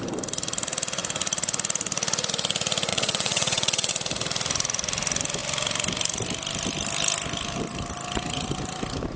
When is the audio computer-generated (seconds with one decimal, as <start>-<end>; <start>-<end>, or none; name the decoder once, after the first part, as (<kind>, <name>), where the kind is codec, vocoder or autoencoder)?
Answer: 2.9-3.9 (vocoder, WaveNeXt)

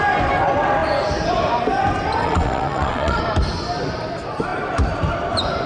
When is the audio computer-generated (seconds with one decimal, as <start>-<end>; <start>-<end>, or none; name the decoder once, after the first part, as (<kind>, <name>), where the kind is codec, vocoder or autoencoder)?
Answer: 2.2-3.2 (vocoder, WaveNeXt)

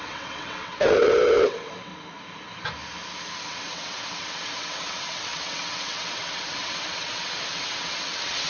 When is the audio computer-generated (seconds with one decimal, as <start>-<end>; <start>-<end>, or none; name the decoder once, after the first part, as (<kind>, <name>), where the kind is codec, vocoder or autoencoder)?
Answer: 0.0-1.9 (vocoder, WaveNeXt); 3.5-8.5

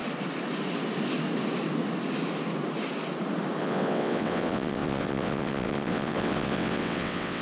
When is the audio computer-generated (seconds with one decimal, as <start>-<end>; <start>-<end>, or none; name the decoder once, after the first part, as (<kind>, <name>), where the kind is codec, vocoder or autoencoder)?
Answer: 3.6-7.4 (vocoder, WaveNeXt)

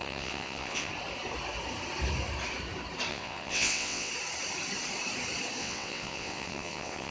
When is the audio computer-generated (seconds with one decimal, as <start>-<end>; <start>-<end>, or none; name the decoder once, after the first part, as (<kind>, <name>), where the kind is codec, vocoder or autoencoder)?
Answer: 0.0-0.9 (vocoder, WaveNeXt); 3.1-4.1; 5.6-7.1